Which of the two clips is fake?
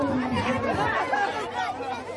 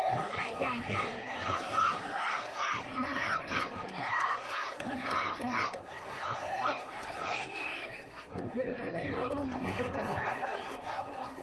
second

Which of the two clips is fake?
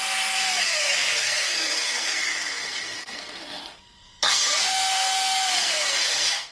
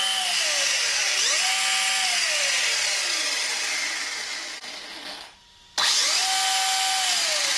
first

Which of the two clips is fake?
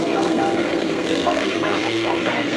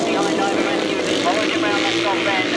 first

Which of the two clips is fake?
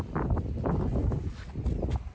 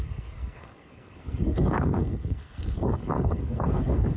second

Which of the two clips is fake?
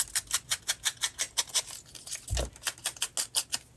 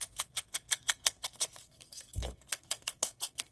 second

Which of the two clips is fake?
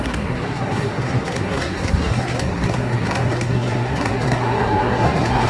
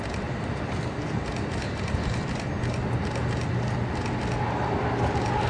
first